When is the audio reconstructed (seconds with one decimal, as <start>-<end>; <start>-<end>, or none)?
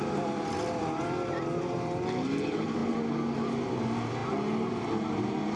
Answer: none